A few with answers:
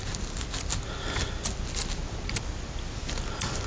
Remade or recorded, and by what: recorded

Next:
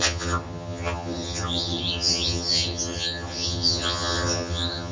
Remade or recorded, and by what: remade, vocoder, HiFi-GAN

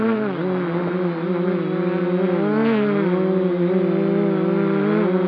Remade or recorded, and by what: recorded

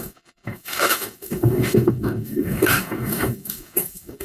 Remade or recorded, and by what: remade, codec, DAC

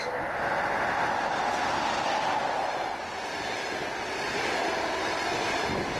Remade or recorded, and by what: recorded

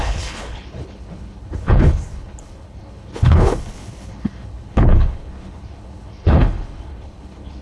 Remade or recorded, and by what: remade, codec, HILCodec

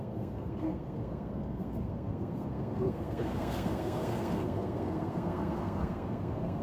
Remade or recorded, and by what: remade, codec, SNAC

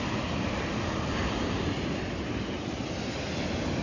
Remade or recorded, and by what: recorded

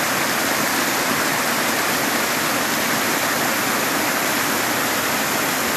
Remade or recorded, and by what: recorded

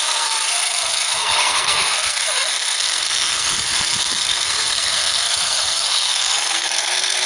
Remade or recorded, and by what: remade, codec, SNAC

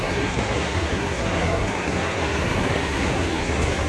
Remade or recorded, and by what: remade, codec, SNAC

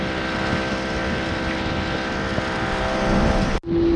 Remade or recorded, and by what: recorded